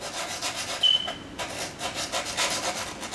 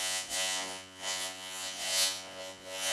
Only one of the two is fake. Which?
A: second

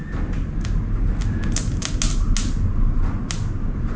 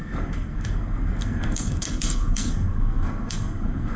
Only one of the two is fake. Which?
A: second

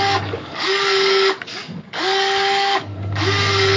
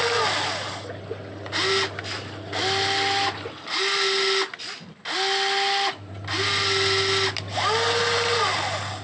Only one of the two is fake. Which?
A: first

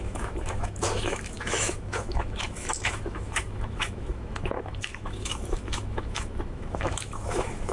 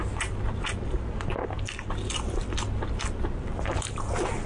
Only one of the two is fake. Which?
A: first